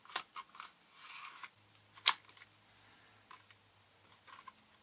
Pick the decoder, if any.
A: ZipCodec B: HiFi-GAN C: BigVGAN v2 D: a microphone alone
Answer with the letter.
D